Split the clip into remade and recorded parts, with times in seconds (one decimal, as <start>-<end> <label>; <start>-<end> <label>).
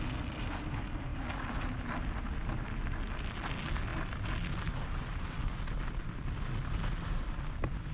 0.0-7.9 recorded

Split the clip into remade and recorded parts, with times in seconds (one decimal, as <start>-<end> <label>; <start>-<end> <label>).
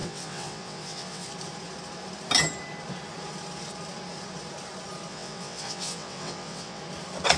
0.0-1.3 remade; 1.3-5.1 recorded; 5.1-6.8 remade; 6.8-7.4 recorded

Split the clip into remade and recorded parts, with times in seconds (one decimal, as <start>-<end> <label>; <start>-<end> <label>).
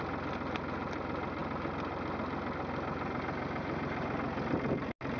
0.0-5.2 recorded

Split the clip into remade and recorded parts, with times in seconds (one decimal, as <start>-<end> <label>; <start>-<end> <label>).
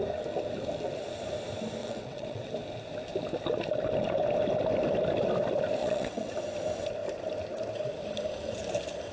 0.0-1.8 recorded; 1.8-2.5 remade; 2.5-5.8 recorded; 5.8-6.3 remade; 6.3-9.1 recorded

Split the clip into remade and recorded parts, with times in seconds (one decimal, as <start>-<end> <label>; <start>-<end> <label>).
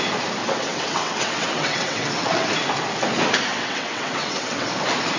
0.0-0.4 recorded; 0.4-2.5 remade; 2.5-3.5 recorded; 3.5-4.7 remade; 4.7-5.2 recorded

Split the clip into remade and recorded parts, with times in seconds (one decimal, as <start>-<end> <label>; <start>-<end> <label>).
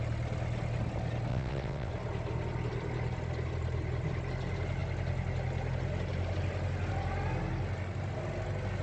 0.0-1.3 recorded; 1.3-1.9 remade; 1.9-8.8 recorded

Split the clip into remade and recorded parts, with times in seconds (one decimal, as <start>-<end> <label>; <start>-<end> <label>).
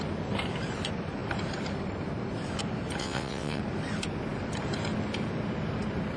0.0-3.0 recorded; 3.0-3.6 remade; 3.6-6.2 recorded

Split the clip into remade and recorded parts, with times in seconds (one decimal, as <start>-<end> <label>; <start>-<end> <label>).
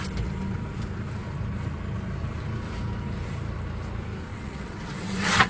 0.0-4.3 recorded; 4.3-5.5 remade